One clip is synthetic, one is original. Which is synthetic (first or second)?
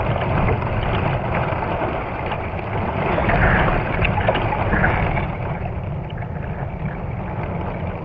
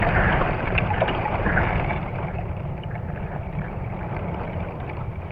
second